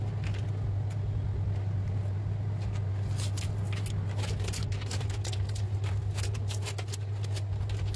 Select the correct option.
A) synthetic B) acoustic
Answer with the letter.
B